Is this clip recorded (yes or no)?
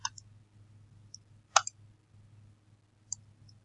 yes